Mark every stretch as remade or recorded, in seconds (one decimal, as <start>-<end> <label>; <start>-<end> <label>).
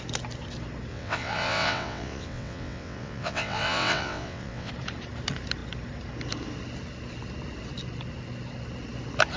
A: 0.0-0.9 recorded; 0.9-4.7 remade; 4.7-9.4 recorded